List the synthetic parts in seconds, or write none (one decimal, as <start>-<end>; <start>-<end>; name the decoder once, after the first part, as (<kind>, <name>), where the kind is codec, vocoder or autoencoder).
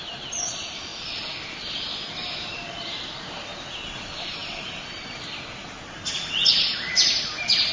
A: 0.9-3.2 (vocoder, BigVGAN v2)